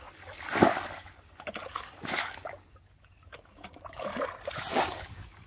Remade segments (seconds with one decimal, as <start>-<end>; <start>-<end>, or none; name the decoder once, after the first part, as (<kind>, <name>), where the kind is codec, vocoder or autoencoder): 0.0-4.1 (codec, DAC); 4.7-5.5